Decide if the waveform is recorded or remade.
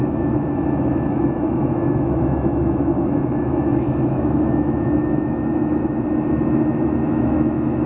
remade